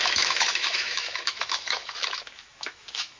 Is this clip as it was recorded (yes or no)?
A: no